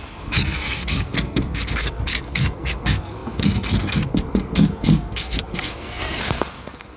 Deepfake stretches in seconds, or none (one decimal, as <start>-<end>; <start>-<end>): 0.0-7.0